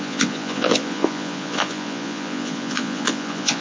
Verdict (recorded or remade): remade